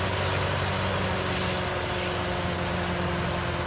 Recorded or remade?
recorded